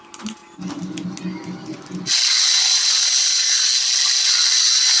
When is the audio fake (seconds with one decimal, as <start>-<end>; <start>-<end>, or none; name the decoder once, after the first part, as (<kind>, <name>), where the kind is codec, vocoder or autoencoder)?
none